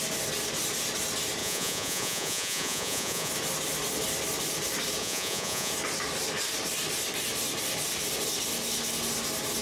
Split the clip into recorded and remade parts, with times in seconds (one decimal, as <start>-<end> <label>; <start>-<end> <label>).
0.0-1.4 recorded; 1.4-3.3 remade; 3.3-5.0 recorded; 5.0-5.7 remade; 5.7-9.6 recorded